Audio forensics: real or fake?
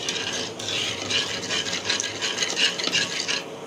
real